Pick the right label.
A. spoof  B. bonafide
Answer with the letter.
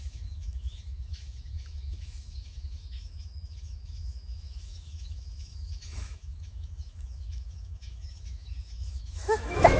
A